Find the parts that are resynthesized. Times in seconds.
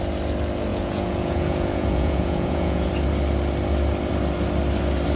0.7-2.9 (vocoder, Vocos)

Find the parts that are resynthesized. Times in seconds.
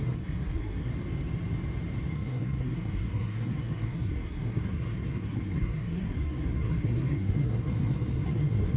0.0-0.9 (codec, SNAC); 2.1-8.8